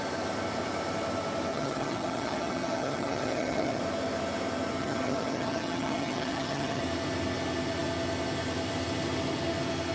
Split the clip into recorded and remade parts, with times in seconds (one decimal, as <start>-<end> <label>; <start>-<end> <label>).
0.0-1.5 recorded; 1.5-3.8 remade; 3.8-4.8 recorded; 4.8-6.8 remade; 6.8-9.9 recorded